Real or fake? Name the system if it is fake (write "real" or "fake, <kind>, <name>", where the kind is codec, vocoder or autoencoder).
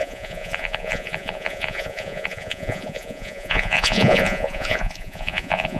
fake, vocoder, Vocos